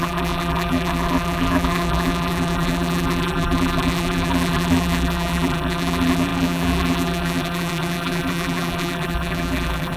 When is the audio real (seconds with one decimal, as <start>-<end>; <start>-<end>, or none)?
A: none

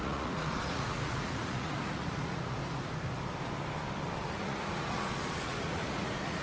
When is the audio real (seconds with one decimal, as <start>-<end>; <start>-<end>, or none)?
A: 2.6-4.2

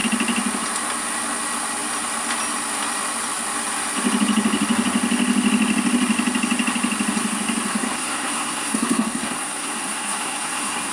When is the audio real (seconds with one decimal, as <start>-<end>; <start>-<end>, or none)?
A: 0.0-7.7

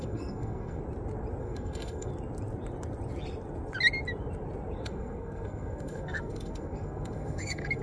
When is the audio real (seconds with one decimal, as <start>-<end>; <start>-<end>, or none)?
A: 0.8-1.4; 2.1-4.8